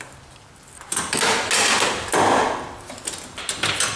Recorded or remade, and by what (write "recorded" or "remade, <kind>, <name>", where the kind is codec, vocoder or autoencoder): recorded